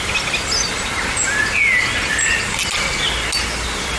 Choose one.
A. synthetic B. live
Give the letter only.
B